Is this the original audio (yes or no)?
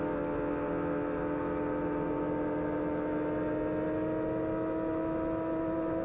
yes